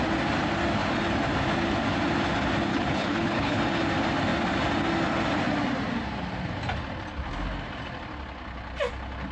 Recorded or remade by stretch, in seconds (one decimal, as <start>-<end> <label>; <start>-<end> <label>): 0.0-2.7 recorded; 2.7-3.6 remade; 3.6-9.3 recorded